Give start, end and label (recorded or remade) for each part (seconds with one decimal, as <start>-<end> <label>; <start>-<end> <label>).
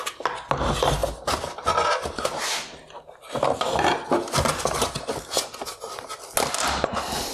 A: 0.0-7.3 recorded